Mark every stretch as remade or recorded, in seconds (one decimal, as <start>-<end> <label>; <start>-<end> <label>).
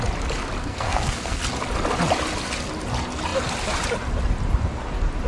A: 0.0-0.6 recorded; 0.6-1.4 remade; 1.4-5.3 recorded